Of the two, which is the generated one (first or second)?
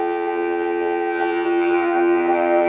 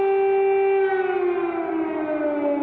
first